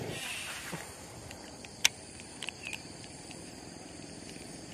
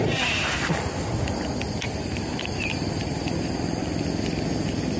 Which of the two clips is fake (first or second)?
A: first